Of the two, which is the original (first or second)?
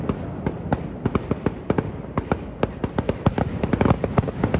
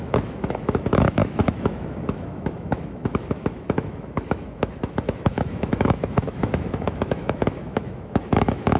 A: first